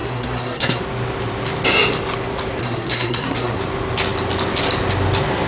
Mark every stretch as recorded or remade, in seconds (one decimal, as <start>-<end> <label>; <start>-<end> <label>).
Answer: 0.0-0.8 remade; 0.8-2.6 recorded; 2.6-3.6 remade; 3.6-5.5 recorded

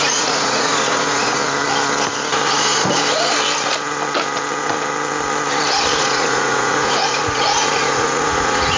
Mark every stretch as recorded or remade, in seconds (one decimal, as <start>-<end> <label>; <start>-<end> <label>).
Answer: 0.0-1.4 remade; 1.4-6.0 recorded; 6.0-8.8 remade

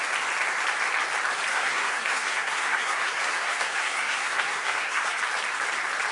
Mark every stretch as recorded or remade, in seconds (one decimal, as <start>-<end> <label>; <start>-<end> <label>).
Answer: 0.0-1.5 recorded; 1.5-5.2 remade; 5.2-6.1 recorded

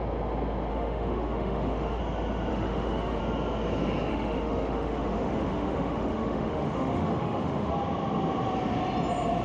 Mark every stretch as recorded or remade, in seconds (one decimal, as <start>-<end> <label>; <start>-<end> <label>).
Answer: 0.0-0.7 recorded; 0.7-2.0 remade; 2.0-2.5 recorded; 2.5-3.2 remade; 3.2-4.1 recorded; 4.1-7.7 remade; 7.7-9.4 recorded

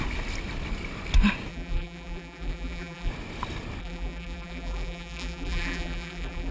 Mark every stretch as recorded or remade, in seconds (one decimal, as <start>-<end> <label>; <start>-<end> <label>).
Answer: 0.0-1.5 recorded; 1.5-3.1 remade; 3.1-3.8 recorded; 3.8-6.5 remade